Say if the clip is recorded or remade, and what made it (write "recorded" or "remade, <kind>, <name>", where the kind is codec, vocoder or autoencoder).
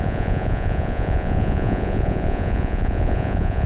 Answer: remade, vocoder, Vocos